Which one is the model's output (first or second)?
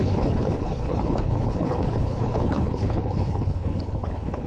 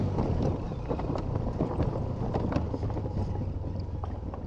first